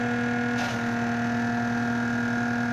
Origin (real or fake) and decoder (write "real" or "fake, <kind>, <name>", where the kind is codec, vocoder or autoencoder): real